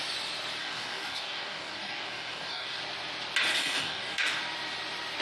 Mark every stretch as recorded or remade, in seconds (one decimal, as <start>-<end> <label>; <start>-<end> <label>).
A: 0.0-0.6 recorded; 0.6-2.8 remade; 2.8-3.5 recorded; 3.5-4.4 remade; 4.4-5.2 recorded